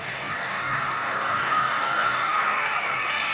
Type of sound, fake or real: fake